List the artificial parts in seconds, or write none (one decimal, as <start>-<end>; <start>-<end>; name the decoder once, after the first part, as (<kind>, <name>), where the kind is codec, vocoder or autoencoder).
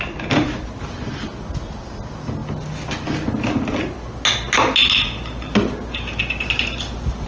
none